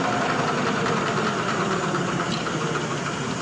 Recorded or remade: remade